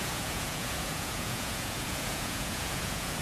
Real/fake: fake